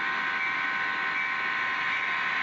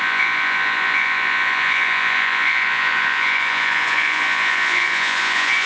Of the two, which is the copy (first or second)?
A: second